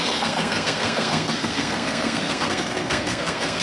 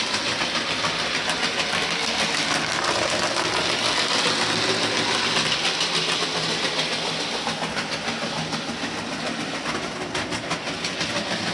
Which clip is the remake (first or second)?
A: first